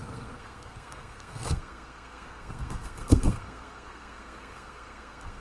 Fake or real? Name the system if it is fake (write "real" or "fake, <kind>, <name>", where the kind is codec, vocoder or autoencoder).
fake, codec, SNAC